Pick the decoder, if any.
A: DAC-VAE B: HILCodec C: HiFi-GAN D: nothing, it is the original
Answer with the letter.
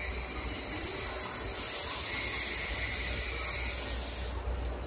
D